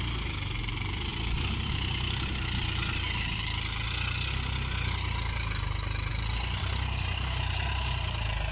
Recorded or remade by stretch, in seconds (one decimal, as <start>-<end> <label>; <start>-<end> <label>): 0.0-1.1 recorded; 1.1-1.7 remade; 1.7-6.1 recorded; 6.1-6.6 remade; 6.6-8.5 recorded